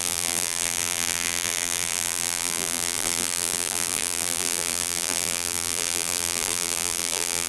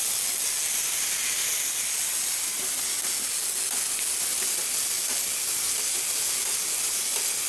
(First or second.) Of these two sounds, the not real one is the first